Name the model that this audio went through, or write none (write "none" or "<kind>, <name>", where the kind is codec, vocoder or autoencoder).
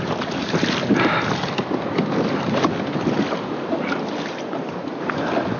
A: none